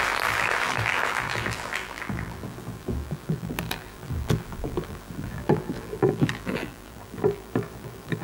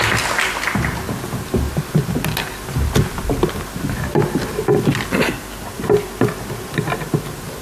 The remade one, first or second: first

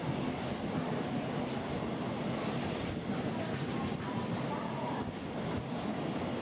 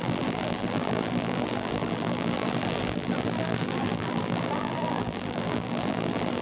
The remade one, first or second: second